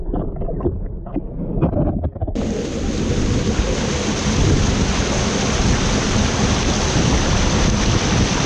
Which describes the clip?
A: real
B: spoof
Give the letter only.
A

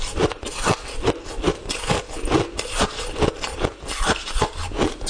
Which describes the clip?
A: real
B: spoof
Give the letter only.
A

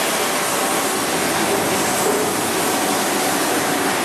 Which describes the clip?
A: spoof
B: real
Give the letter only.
B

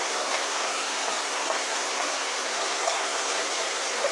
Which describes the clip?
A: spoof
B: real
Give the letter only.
A